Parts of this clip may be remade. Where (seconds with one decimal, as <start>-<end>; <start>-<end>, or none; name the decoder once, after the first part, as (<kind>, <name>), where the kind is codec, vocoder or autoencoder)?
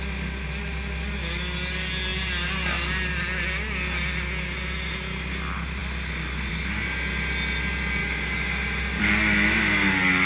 8.0-9.0 (codec, DAC)